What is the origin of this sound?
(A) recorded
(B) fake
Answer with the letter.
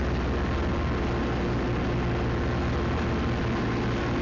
A